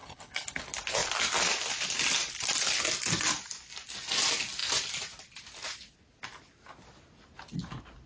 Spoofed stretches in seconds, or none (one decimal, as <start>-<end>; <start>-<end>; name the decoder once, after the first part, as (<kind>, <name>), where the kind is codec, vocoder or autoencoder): 0.0-0.6 (codec, HILCodec)